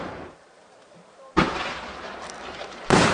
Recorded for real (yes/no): no